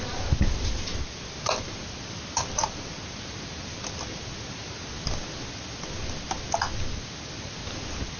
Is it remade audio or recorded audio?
recorded